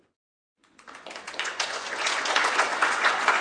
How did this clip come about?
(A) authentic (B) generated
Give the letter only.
B